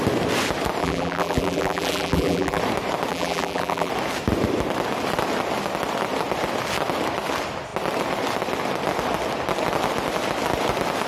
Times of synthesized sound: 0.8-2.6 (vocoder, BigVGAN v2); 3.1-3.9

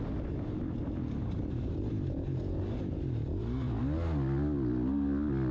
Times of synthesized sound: 1.2-3.8 (vocoder, BigVGAN v2)